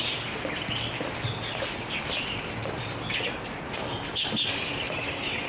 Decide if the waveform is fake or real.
real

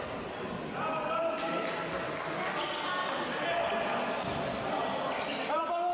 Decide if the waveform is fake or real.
real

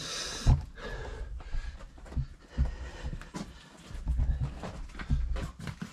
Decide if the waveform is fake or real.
real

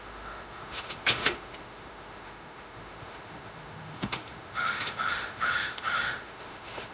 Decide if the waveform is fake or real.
fake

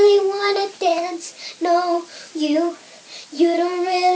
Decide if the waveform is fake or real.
fake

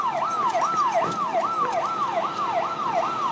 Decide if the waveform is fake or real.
real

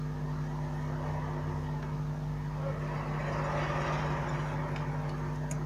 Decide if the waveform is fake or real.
real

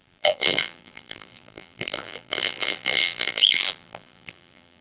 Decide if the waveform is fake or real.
fake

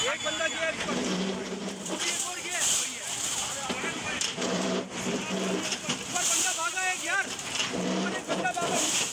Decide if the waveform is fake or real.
fake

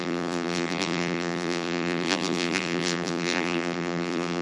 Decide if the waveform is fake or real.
fake